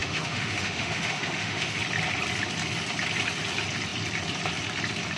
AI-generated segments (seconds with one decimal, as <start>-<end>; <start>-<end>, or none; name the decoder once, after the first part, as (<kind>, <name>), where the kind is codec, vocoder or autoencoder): 0.0-1.8 (autoencoder, DAC-VAE)